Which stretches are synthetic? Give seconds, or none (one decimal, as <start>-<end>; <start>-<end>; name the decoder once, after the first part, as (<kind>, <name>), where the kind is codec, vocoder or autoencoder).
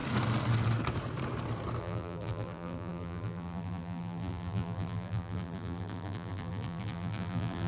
1.8-7.7 (vocoder, BigVGAN v2)